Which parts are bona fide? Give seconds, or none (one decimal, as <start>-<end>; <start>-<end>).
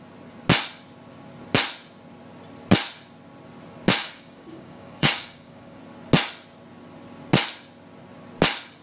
0.0-4.0; 5.8-8.8